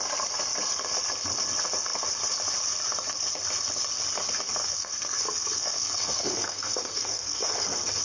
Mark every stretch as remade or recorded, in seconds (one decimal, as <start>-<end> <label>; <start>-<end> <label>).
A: 0.0-4.6 recorded; 4.6-7.5 remade; 7.5-8.0 recorded